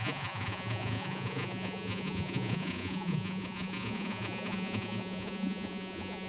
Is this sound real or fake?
fake